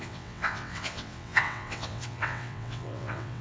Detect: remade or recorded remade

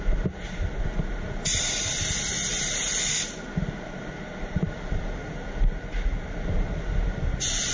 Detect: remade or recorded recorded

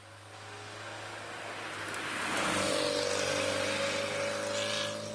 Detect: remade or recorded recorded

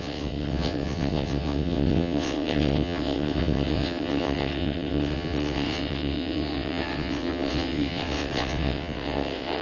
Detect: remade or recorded remade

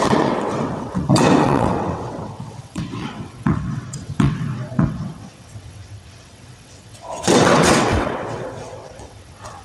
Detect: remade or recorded remade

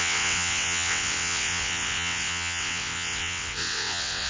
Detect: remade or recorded remade